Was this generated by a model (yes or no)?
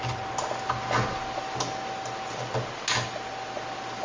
no